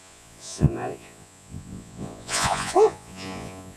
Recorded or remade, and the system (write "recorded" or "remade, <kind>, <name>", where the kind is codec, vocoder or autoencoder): remade, vocoder, Vocos